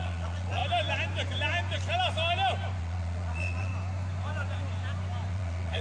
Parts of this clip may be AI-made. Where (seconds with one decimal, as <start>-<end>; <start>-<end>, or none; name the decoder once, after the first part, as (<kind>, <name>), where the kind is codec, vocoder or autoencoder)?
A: 0.0-0.6 (vocoder, Vocos); 2.8-3.7; 5.3-5.8